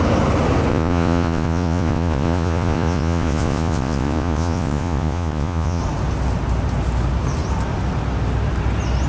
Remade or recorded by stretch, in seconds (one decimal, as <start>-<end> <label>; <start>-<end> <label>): 0.0-0.7 recorded; 0.7-5.8 remade; 5.8-9.1 recorded